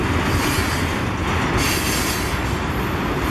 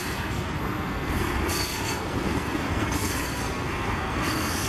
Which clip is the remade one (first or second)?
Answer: second